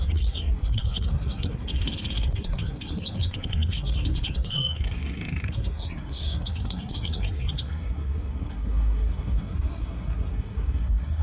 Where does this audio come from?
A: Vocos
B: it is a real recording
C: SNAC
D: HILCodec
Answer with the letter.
C